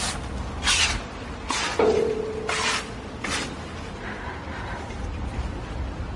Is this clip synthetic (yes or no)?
no